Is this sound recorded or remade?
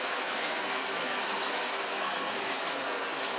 remade